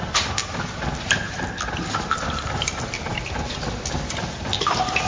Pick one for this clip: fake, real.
real